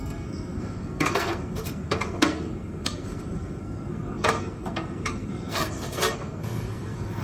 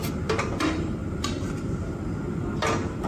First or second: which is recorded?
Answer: second